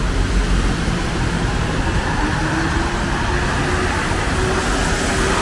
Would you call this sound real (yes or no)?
yes